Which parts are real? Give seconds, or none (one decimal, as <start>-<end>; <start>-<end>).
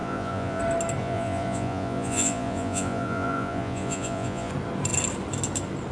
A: 0.6-1.0; 4.5-5.9